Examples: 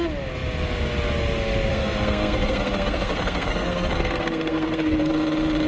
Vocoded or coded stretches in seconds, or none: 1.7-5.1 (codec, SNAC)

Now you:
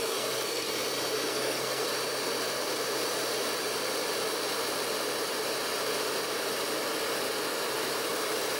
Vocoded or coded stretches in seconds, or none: 0.0-0.7 (codec, SNAC); 1.3-1.9

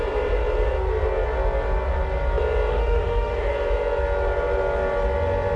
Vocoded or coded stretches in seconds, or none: 2.7-3.5 (autoencoder, DAC-VAE)

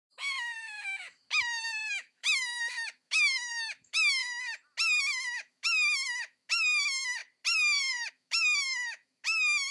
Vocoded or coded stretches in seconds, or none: 0.0-4.2 (autoencoder, DAC-VAE); 5.0-7.2; 8.1-9.7

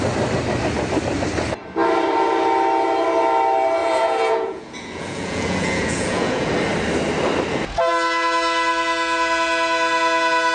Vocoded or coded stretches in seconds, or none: 3.8-6.5 (vocoder, Vocos)

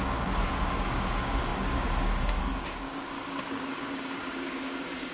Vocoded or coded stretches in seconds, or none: 0.0-5.1 (codec, DAC)

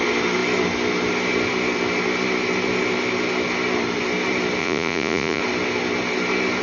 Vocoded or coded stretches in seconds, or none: 4.6-5.4 (vocoder, Vocos)

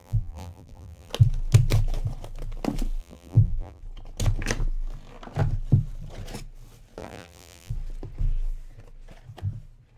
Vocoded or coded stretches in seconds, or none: 0.0-1.1 (vocoder, BigVGAN v2); 3.0-3.8; 7.0-7.7